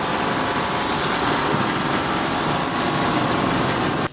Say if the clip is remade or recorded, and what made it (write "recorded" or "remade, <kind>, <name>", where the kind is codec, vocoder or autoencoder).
recorded